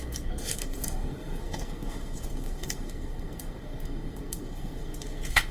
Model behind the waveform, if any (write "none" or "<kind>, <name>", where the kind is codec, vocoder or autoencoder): codec, SNAC